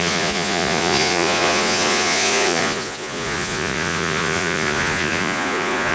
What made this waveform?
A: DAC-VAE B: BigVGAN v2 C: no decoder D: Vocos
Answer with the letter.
D